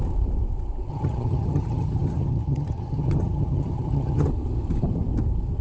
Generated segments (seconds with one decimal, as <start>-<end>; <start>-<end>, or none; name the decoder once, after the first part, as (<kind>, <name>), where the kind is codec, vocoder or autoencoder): 0.9-4.3 (vocoder, HiFi-GAN)